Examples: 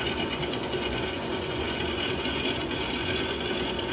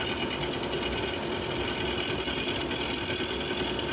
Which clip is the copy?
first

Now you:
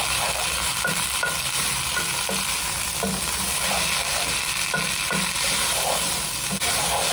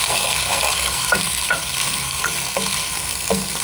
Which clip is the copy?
second